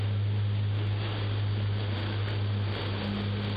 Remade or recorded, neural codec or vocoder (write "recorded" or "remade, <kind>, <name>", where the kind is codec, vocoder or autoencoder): recorded